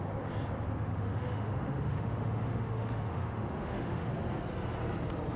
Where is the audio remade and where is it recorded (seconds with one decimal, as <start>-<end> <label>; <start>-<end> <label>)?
0.0-0.9 recorded; 0.9-4.1 remade; 4.1-5.4 recorded